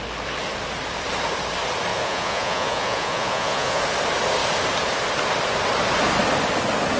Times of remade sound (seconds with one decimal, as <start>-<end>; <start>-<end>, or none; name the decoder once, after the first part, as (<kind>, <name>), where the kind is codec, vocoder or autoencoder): 1.9-3.8 (vocoder, Vocos)